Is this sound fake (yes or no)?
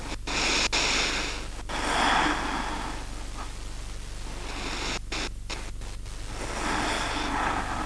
no